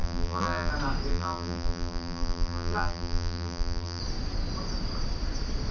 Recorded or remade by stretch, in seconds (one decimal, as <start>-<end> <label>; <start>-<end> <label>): 0.0-0.7 remade; 0.7-1.1 recorded; 1.1-4.0 remade; 4.0-5.7 recorded